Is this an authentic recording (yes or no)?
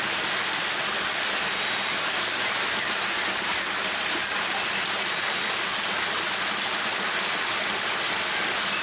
yes